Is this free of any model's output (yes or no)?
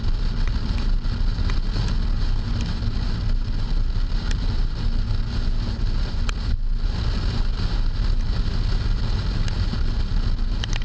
yes